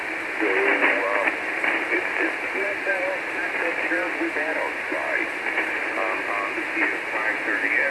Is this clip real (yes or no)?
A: yes